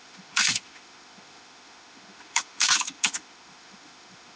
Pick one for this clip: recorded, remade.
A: remade